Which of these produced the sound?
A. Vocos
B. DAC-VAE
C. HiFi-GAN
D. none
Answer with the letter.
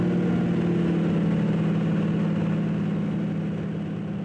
D